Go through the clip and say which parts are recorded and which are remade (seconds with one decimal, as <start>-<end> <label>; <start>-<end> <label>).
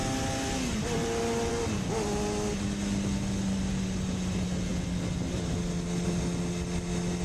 0.0-7.2 recorded